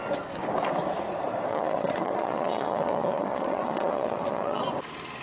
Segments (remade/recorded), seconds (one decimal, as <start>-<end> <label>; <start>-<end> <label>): 0.0-1.5 recorded; 1.5-4.6 remade; 4.6-5.2 recorded